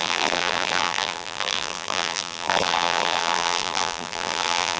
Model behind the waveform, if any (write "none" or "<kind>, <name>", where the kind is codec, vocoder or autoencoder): vocoder, BigVGAN v2